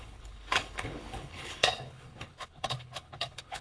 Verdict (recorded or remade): remade